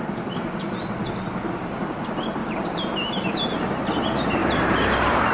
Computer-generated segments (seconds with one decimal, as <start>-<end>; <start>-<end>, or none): 2.4-3.1; 4.4-5.3

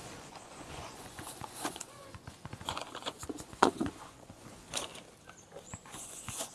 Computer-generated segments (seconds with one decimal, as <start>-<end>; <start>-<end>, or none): 0.0-4.9; 5.6-6.5

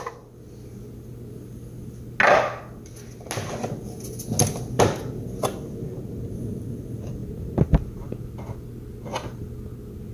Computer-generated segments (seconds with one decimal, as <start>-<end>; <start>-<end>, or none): none